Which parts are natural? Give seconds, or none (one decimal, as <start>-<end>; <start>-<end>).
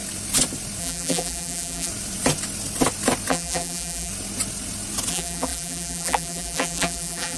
0.0-0.8; 1.9-3.3; 4.1-5.1